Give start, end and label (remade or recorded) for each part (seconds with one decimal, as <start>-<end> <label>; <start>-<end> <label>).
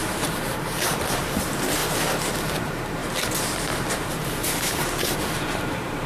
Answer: 0.0-1.8 remade; 1.8-2.3 recorded; 2.3-3.0 remade; 3.0-3.5 recorded; 3.5-6.1 remade